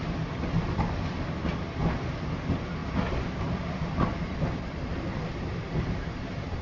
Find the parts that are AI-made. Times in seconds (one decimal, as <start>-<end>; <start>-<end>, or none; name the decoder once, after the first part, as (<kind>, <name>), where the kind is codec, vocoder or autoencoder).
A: none